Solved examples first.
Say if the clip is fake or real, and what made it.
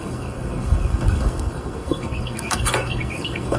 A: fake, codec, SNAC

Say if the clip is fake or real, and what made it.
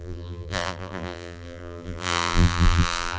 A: fake, vocoder, BigVGAN v2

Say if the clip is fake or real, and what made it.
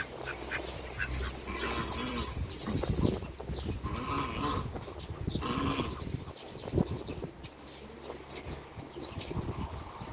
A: real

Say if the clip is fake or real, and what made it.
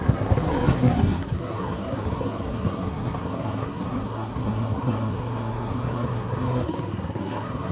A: fake, codec, SNAC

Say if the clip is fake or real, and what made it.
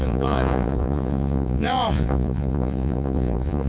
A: fake, vocoder, Vocos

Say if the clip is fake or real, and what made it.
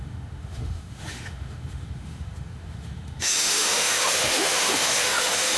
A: fake, autoencoder, DAC-VAE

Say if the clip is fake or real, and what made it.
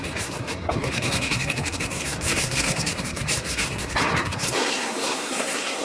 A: fake, codec, SNAC